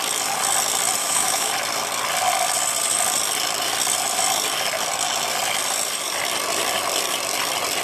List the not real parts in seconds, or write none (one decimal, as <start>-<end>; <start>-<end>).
1.0-1.5